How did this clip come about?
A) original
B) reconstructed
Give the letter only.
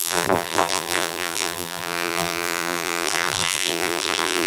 B